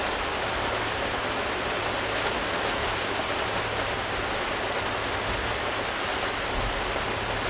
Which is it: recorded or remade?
recorded